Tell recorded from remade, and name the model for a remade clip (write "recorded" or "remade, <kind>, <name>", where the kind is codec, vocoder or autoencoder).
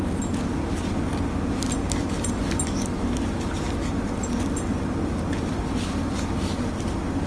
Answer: recorded